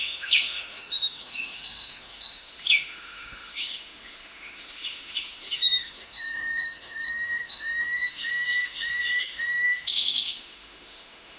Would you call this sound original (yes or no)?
no